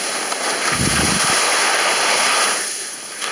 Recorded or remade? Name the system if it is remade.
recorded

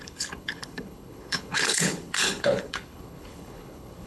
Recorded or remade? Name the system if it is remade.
remade, codec, HILCodec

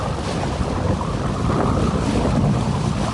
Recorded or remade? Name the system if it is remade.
recorded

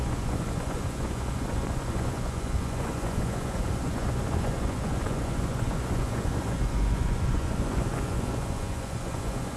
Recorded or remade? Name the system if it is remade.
remade, vocoder, Vocos